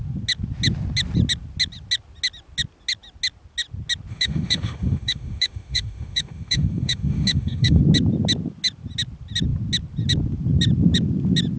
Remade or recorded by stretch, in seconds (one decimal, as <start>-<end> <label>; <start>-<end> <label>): 0.0-4.1 recorded; 4.1-7.8 remade; 7.8-11.6 recorded